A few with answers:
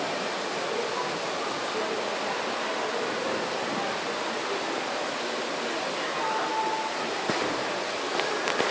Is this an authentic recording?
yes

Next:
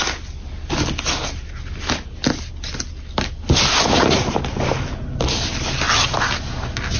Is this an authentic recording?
yes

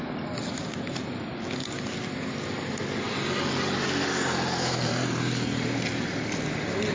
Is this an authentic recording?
yes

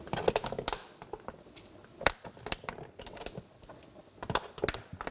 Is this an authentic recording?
yes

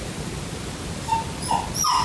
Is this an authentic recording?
yes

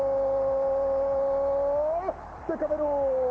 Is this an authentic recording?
yes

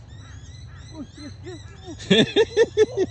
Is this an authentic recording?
yes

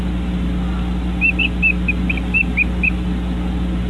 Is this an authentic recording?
yes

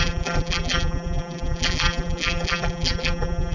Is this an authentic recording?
no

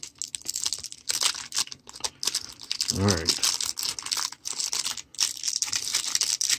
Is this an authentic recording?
yes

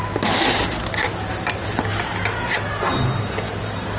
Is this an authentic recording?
yes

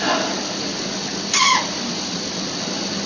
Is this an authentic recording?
yes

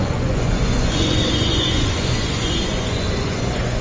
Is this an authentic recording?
no